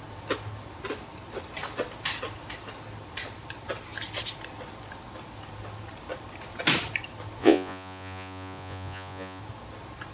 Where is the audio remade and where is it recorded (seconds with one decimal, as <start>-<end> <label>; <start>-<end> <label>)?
0.0-7.4 recorded; 7.4-9.4 remade; 9.4-10.1 recorded